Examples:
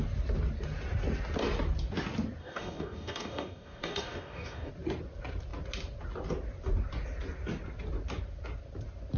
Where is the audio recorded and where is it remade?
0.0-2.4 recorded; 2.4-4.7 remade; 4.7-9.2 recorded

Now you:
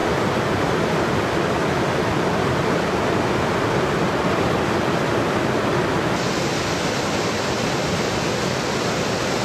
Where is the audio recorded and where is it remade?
0.0-9.4 recorded

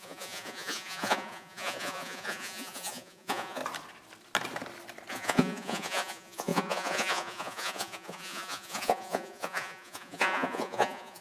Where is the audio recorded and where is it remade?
0.0-3.6 remade; 3.6-5.1 recorded; 5.1-11.2 remade